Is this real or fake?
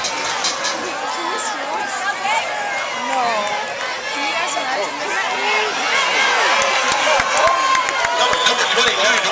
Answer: real